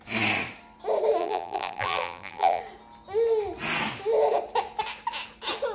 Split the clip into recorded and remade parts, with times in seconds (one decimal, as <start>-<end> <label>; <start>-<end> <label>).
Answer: 0.0-1.2 recorded; 1.2-2.6 remade; 2.6-5.7 recorded